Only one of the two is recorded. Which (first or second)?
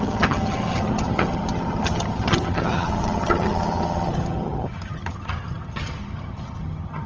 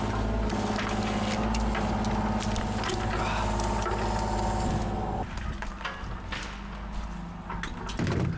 second